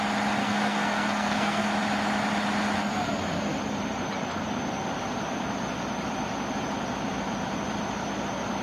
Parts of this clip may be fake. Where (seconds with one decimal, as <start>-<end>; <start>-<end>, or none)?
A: 0.4-1.7